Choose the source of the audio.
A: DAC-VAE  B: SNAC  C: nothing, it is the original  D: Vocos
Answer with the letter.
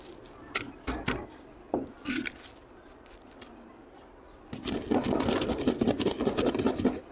C